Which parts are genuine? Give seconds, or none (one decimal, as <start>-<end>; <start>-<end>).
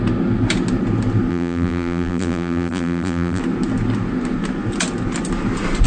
0.0-1.3; 3.4-5.9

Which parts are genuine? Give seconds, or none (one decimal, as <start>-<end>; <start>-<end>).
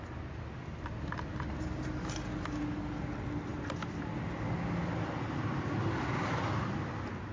0.0-7.3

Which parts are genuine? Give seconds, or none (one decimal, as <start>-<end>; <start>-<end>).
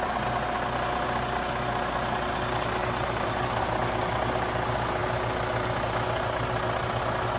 0.0-2.8; 3.6-7.4